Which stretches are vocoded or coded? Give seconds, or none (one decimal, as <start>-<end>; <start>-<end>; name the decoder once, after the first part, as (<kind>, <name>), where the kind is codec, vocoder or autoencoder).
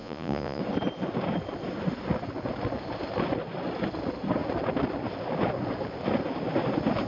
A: 0.0-0.6 (vocoder, Vocos)